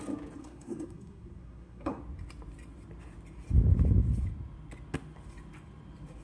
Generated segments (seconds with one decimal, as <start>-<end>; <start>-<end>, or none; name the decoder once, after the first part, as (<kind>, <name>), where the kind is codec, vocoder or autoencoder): 0.4-2.0 (codec, SNAC)